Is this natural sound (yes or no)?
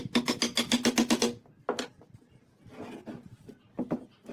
yes